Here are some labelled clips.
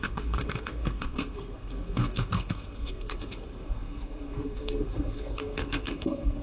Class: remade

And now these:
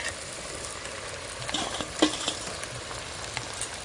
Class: recorded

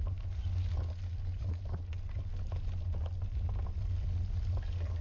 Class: recorded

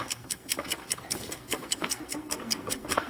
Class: remade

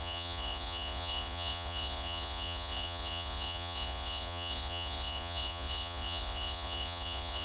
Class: remade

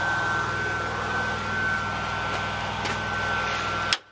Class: recorded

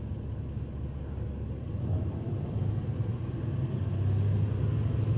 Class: recorded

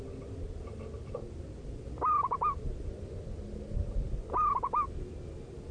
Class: recorded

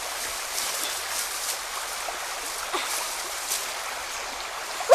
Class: recorded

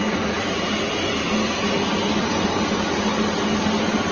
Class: recorded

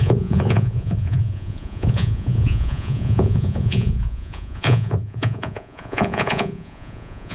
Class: remade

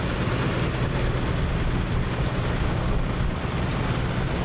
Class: recorded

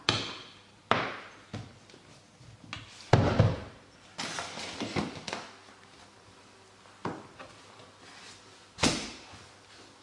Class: recorded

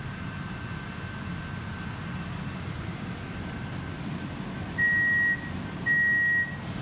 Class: recorded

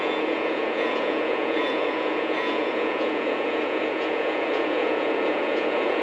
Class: remade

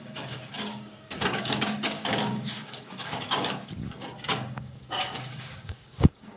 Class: remade